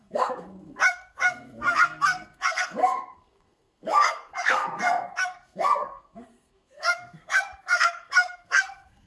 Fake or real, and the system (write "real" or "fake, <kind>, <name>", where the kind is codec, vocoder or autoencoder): fake, codec, SNAC